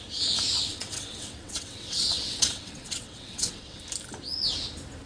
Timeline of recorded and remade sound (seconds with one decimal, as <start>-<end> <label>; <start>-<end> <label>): 0.0-0.7 recorded; 0.7-3.8 remade; 3.8-5.1 recorded